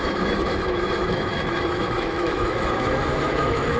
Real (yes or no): no